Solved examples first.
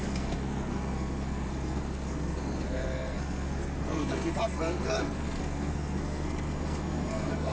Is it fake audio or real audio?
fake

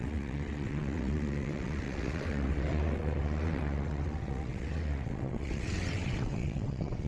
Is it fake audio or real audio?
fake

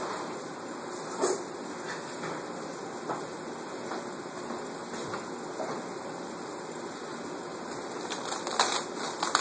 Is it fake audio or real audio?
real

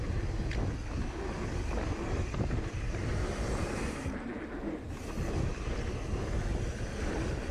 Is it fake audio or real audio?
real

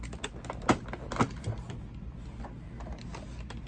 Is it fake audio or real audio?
real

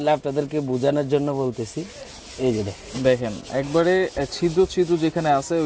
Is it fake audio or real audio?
real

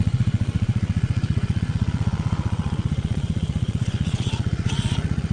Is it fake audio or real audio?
fake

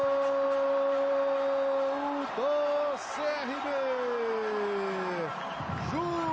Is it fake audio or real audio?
real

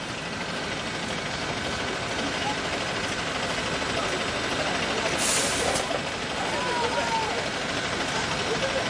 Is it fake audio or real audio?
real